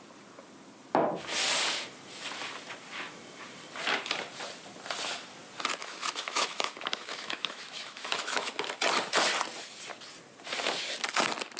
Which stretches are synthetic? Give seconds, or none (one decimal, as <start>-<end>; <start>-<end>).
5.8-8.5